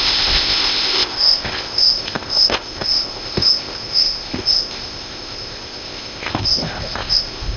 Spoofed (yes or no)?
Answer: yes